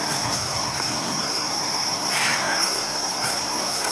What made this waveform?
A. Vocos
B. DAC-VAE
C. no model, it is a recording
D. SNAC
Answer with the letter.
D